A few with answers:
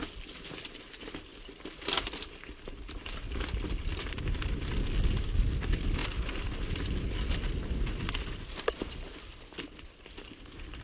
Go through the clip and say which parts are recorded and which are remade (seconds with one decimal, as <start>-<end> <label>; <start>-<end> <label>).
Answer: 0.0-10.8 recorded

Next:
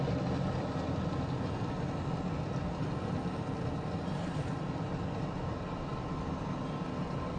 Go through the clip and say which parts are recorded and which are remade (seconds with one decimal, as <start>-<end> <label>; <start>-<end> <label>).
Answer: 0.0-7.4 recorded

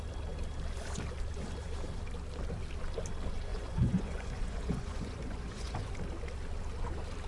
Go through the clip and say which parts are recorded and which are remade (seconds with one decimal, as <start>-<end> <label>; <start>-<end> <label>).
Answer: 0.0-3.5 recorded; 3.5-5.9 remade; 5.9-7.3 recorded

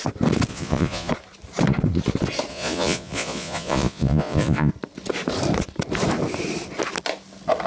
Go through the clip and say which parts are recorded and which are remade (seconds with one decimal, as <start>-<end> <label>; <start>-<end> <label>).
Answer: 0.0-0.5 recorded; 0.5-1.1 remade; 1.1-2.5 recorded; 2.5-4.7 remade; 4.7-7.7 recorded